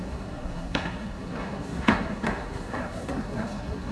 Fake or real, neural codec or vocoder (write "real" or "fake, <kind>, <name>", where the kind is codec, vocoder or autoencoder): fake, codec, SNAC